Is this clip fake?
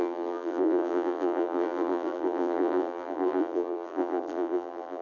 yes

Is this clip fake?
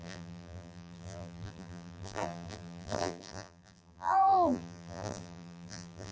yes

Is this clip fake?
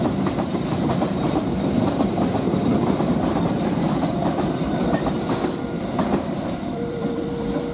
yes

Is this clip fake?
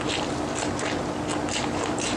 no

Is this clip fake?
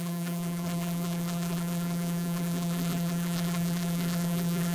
yes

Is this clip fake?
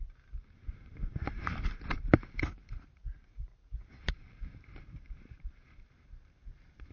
yes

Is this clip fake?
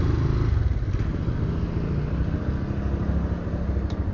no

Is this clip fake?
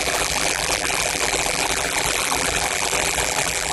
yes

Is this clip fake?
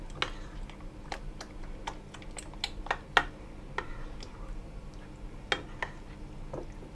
no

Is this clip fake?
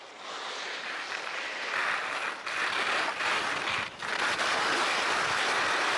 no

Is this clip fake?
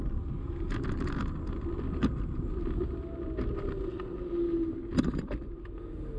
no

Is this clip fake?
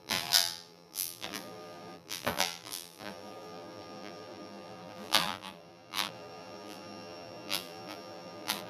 yes